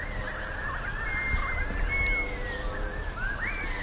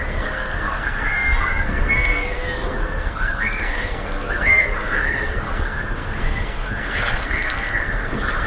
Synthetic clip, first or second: second